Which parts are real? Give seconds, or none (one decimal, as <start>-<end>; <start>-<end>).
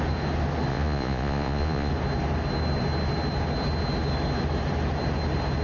0.0-0.7; 1.9-5.6